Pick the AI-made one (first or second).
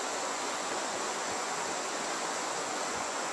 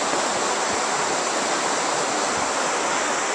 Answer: first